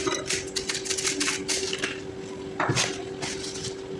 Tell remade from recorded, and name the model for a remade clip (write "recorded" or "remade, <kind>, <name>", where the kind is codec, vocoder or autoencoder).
recorded